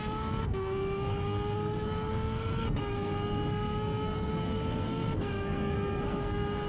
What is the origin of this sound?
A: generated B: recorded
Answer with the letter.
A